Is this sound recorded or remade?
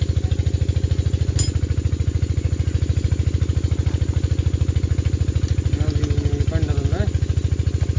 recorded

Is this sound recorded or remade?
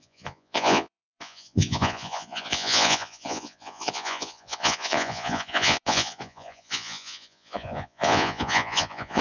remade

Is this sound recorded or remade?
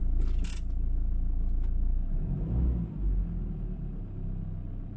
recorded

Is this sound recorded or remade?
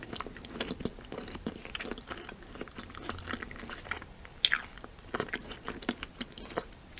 recorded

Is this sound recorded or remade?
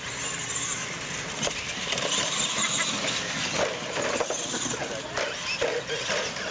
recorded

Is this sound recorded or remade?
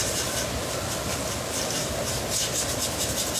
recorded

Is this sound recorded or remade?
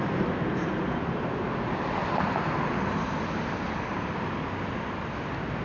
recorded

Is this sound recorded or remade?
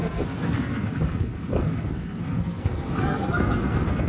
remade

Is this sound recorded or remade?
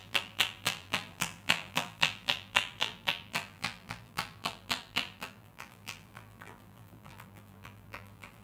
remade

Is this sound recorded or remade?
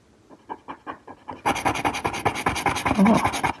recorded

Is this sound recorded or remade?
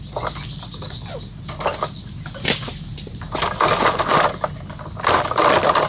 recorded